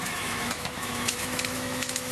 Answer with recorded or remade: remade